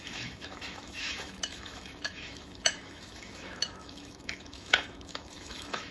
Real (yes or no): no